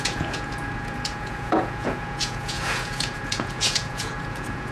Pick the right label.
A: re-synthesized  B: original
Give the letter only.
A